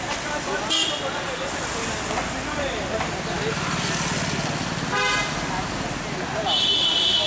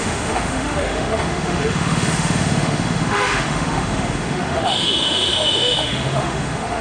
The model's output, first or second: second